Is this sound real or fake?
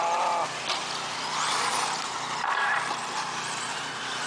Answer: real